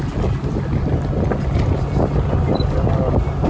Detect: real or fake real